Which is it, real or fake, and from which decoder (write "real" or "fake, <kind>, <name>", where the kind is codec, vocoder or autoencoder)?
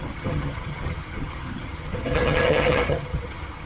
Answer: fake, vocoder, HiFi-GAN